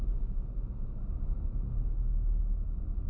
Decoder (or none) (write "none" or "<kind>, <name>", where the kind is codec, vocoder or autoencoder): none